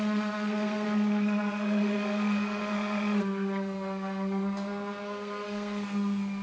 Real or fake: fake